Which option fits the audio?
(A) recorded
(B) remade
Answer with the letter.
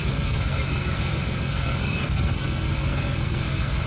B